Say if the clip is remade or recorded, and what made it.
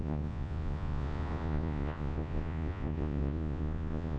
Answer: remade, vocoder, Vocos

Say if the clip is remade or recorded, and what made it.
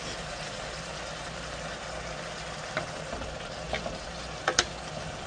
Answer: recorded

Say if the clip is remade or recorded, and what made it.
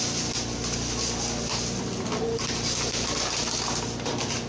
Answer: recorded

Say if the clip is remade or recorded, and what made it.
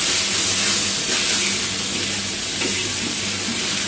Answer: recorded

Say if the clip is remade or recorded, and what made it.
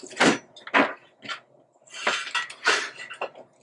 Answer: recorded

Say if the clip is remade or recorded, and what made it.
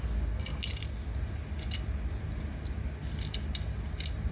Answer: recorded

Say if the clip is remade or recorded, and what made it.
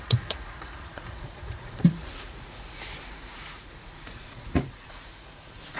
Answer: remade, vocoder, Vocos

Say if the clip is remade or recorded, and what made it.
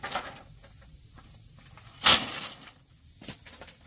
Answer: recorded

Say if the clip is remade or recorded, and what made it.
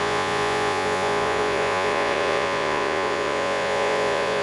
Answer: remade, vocoder, Vocos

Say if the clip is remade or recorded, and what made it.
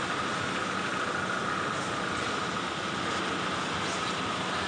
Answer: recorded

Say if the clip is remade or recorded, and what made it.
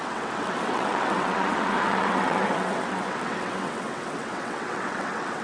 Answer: remade, vocoder, WaveNeXt